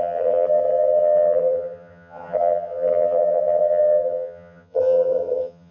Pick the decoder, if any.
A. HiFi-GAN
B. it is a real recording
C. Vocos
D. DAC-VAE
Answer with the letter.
A